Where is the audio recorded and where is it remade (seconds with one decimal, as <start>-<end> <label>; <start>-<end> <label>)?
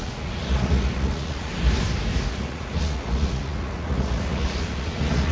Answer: 0.0-1.5 remade; 1.5-2.3 recorded; 2.3-5.3 remade